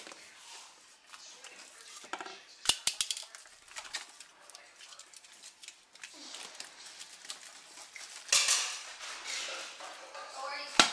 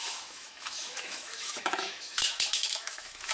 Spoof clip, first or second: second